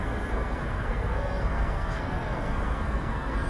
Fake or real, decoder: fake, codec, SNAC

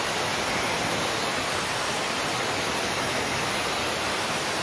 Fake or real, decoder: real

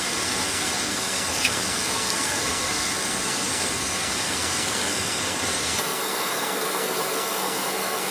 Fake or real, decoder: fake, codec, SNAC